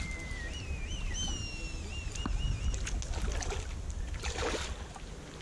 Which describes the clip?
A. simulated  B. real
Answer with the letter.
B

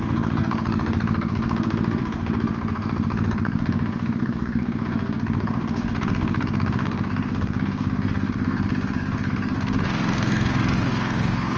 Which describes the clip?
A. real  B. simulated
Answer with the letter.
B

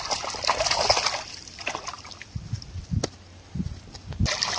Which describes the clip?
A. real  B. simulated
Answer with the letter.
A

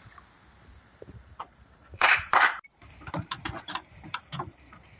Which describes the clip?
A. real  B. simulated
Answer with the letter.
B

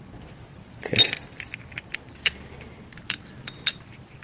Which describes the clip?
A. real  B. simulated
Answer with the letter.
A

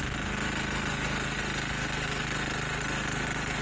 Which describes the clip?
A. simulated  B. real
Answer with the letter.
B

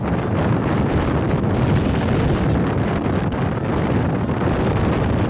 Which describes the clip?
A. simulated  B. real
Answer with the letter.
B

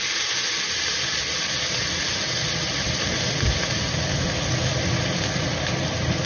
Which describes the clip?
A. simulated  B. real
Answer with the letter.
B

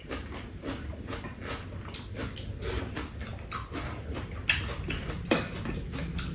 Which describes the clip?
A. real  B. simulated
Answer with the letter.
A